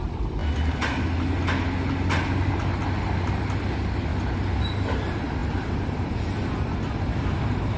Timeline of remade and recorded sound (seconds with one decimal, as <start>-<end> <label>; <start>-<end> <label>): 0.0-0.4 remade; 0.4-2.5 recorded; 2.5-4.1 remade; 4.1-4.6 recorded; 4.6-7.8 remade